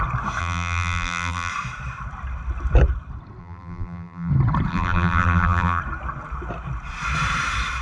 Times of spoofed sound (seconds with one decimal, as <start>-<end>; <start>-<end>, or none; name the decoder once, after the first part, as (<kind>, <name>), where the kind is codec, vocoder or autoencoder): 0.4-1.5 (vocoder, BigVGAN v2); 3.4-4.3; 4.7-5.8